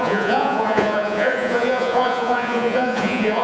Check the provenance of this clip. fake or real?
fake